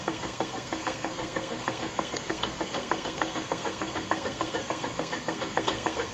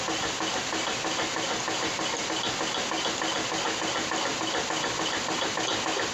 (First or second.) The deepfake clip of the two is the first